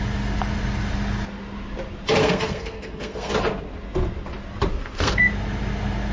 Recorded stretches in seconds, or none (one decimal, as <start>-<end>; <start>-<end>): 0.0-2.2; 3.3-4.7; 5.2-6.1